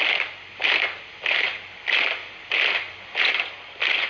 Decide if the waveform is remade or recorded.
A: recorded